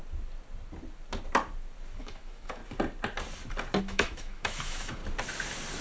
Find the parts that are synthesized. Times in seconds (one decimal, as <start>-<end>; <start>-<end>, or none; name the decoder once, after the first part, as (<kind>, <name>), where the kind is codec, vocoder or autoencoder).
2.0-2.6 (autoencoder, DAC-VAE); 3.8-5.0